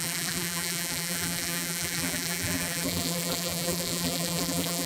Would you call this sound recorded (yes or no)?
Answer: no